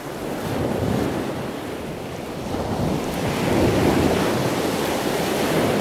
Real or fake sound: real